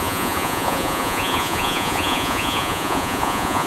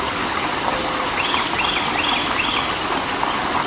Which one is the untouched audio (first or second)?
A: second